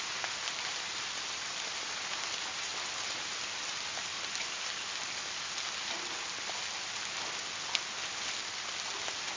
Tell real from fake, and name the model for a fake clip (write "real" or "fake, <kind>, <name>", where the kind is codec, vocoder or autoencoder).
real